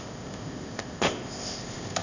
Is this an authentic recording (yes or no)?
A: no